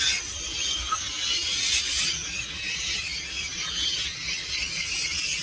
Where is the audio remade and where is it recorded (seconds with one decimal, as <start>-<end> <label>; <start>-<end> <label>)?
0.0-5.4 recorded